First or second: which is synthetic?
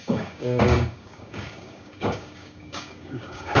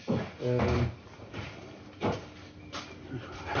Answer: first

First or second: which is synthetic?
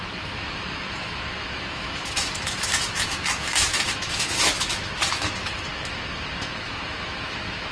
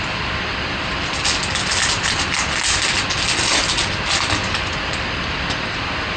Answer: first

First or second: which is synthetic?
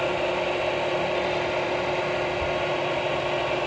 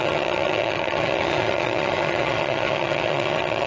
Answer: second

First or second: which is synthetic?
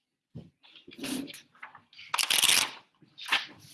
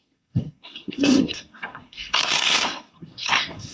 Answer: second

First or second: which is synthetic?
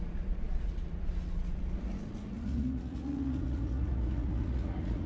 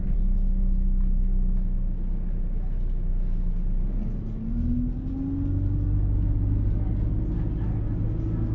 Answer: first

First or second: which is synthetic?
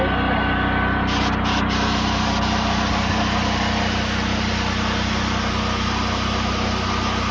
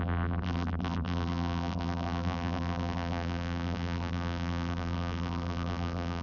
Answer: second